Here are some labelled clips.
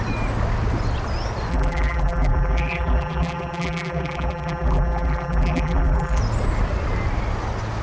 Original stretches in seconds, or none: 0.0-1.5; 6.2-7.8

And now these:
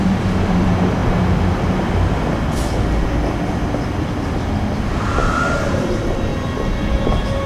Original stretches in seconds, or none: 1.0-5.5; 6.3-6.8

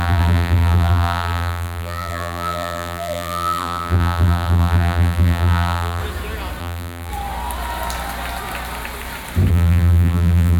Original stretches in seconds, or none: 6.0-6.6; 7.1-9.5

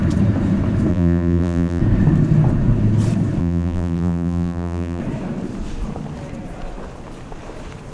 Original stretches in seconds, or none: 0.0-0.9; 1.8-3.4; 5.0-7.9

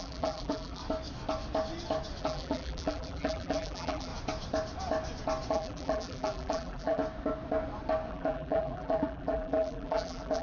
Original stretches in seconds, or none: 0.8-2.2; 4.1-5.5; 7.0-8.1

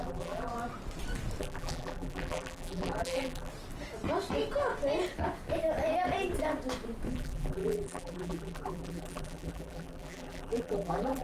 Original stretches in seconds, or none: 0.5-1.4; 3.5-7.1

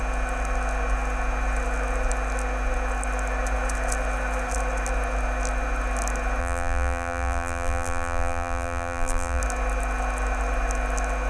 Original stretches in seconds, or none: 0.0-6.4; 9.4-11.3

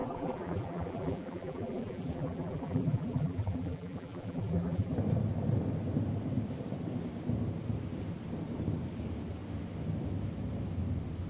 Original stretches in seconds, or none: 4.9-11.3